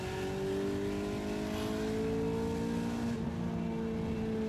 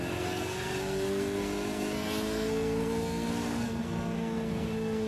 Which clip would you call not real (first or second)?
second